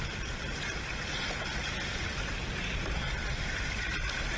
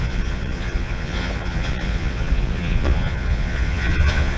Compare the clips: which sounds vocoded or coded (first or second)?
second